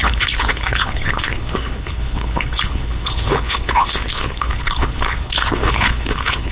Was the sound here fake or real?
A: fake